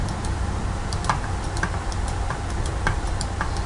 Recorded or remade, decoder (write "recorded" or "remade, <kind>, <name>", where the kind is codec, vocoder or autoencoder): remade, vocoder, BigVGAN v2